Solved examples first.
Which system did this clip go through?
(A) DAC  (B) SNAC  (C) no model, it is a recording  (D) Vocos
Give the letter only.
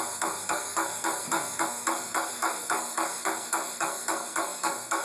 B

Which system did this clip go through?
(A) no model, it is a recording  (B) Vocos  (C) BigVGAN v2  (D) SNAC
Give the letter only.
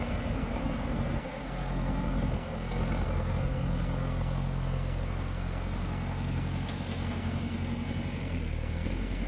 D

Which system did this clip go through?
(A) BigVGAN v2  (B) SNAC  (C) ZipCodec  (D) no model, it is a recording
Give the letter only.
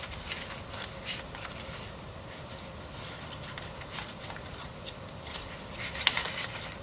D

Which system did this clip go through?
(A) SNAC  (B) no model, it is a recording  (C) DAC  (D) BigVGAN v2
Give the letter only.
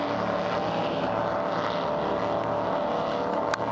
B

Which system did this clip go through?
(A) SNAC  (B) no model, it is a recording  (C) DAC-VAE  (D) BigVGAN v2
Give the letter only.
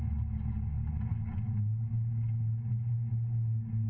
B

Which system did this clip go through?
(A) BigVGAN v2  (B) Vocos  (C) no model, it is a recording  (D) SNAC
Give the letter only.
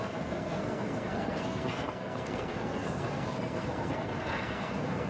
D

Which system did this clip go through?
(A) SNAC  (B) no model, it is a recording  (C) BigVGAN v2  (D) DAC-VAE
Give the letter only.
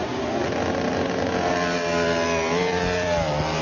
B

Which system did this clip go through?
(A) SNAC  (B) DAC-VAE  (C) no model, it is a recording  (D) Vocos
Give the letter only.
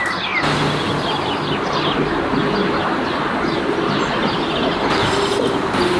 C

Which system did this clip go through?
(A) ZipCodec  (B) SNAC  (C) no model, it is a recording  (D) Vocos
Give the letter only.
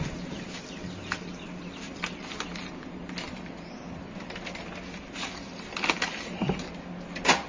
C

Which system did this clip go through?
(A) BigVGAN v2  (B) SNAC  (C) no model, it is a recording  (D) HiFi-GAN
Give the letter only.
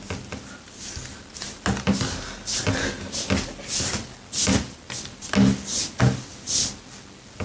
C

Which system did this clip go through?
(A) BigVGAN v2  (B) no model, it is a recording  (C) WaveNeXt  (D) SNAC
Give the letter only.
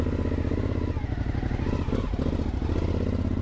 B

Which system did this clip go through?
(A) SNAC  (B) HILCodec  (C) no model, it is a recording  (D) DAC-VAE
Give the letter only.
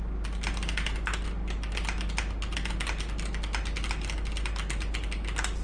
C